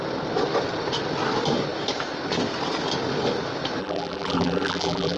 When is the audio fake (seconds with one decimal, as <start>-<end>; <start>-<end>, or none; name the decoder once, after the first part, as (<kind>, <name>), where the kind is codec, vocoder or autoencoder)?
3.8-5.2 (vocoder, BigVGAN v2)